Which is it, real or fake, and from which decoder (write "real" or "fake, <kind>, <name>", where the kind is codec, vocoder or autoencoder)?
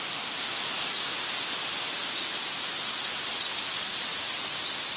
real